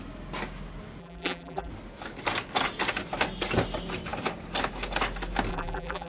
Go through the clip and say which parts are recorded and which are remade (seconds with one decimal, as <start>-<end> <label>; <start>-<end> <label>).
0.0-1.0 recorded; 1.0-1.7 remade; 1.7-5.5 recorded; 5.5-6.1 remade